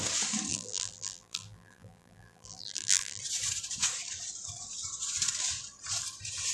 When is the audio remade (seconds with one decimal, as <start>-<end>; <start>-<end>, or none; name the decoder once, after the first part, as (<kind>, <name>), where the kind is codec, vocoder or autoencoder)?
0.5-3.2 (vocoder, BigVGAN v2)